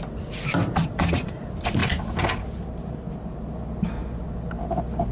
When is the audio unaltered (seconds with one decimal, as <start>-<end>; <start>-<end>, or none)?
0.0-0.8; 1.4-5.1